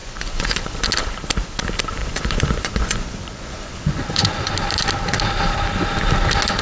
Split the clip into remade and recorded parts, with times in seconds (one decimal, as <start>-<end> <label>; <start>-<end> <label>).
0.0-0.8 remade; 0.8-2.0 recorded; 2.0-4.5 remade; 4.5-6.6 recorded